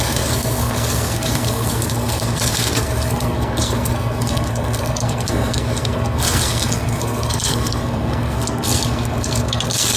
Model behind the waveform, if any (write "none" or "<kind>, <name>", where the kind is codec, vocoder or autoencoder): codec, SNAC